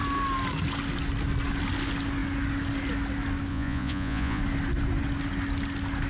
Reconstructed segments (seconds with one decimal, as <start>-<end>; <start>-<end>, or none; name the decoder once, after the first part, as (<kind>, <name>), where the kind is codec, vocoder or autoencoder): 3.5-4.4 (vocoder, Vocos)